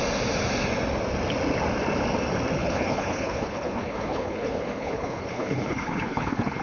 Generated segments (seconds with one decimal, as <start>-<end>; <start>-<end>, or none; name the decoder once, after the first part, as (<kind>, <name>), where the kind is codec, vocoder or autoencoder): 2.6-6.6 (codec, HILCodec)